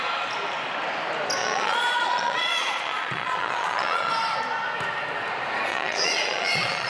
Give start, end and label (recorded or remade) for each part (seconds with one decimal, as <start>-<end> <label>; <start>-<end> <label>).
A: 0.0-1.4 recorded; 1.4-4.1 remade; 4.1-5.7 recorded; 5.7-6.9 remade